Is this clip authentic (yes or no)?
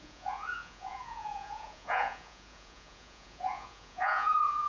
no